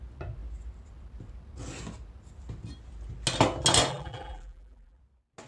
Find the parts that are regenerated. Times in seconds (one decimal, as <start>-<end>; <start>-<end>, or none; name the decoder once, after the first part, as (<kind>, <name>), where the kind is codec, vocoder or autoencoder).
3.9-5.0 (vocoder, BigVGAN v2)